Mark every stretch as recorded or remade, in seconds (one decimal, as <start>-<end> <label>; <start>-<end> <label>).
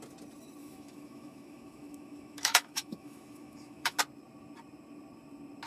0.0-0.6 recorded; 0.6-4.0 remade; 4.0-5.7 recorded